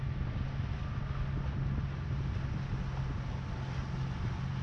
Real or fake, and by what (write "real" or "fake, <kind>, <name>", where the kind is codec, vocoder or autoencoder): real